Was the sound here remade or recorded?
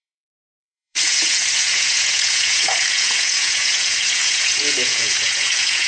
remade